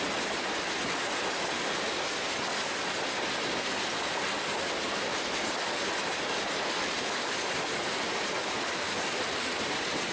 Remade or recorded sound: recorded